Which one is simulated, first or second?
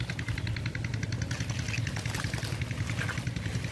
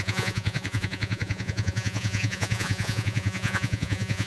second